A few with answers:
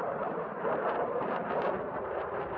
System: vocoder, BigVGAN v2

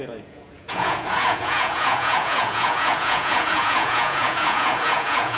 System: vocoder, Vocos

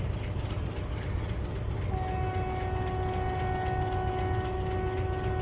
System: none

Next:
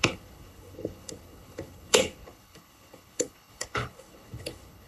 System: codec, HILCodec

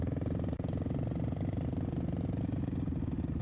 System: none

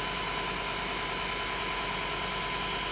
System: none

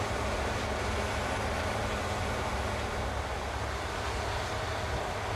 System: none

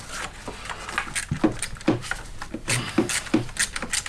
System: none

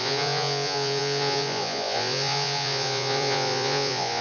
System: vocoder, Vocos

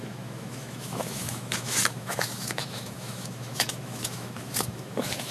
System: autoencoder, DAC-VAE